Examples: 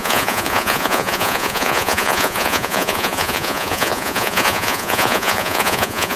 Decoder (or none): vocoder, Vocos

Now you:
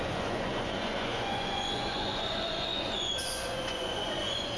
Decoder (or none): vocoder, Vocos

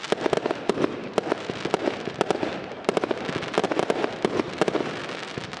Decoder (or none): none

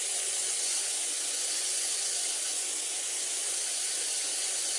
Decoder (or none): vocoder, Vocos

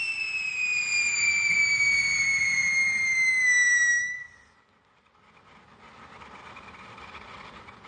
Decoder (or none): none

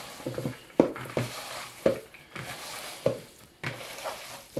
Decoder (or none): none